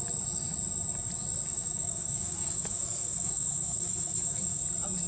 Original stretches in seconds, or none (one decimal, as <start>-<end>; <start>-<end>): 0.0-1.5; 4.6-5.1